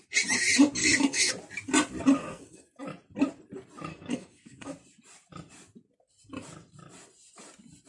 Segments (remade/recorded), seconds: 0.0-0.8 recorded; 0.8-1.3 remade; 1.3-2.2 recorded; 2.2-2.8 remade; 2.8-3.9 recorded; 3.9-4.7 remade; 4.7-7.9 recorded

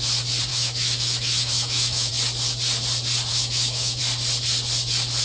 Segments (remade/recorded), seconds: 0.0-0.5 recorded; 0.5-2.1 remade; 2.1-3.3 recorded; 3.3-4.0 remade; 4.0-5.2 recorded

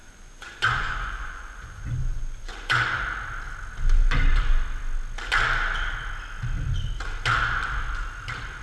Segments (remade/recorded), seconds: 0.0-3.0 remade; 3.0-8.6 recorded

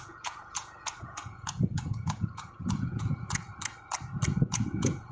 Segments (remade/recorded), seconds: 0.0-3.5 remade; 3.5-4.5 recorded; 4.5-5.1 remade